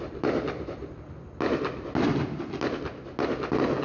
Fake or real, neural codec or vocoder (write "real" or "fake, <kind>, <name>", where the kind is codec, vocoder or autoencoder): real